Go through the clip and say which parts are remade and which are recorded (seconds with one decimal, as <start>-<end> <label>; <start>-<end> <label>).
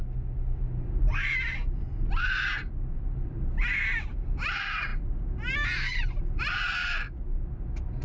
0.0-8.0 recorded